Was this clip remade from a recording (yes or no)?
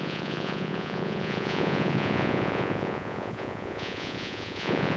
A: yes